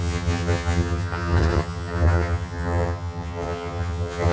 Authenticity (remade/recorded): remade